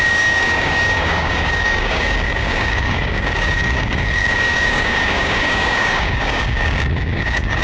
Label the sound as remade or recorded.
remade